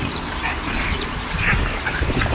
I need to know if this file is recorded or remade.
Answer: remade